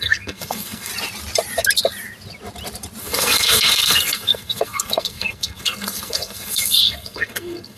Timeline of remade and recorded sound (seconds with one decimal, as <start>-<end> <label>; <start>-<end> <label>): 0.0-0.9 remade; 0.9-3.0 recorded; 3.0-7.8 remade